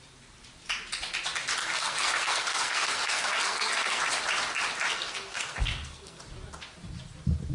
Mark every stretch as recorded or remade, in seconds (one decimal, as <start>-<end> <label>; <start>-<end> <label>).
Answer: 0.0-1.6 recorded; 1.6-4.0 remade; 4.0-4.9 recorded; 4.9-6.2 remade; 6.2-7.5 recorded